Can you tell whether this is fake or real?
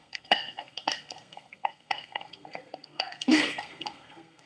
fake